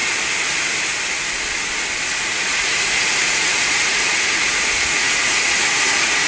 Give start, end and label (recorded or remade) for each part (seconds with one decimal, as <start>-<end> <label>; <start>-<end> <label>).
0.0-2.1 recorded; 2.1-6.3 remade